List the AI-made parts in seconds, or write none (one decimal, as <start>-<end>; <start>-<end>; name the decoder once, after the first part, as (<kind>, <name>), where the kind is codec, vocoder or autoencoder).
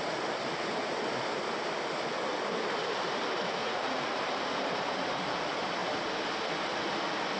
3.6-4.2 (vocoder, Vocos)